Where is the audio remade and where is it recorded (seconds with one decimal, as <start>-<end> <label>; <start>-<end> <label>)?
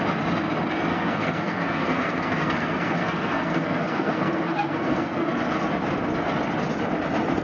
0.0-0.9 recorded; 0.9-5.3 remade; 5.3-7.4 recorded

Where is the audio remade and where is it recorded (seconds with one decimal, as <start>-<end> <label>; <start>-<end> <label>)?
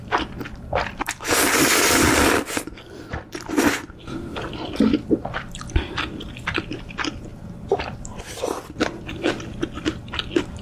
0.0-10.6 remade